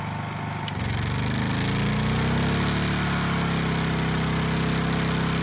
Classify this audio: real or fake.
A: real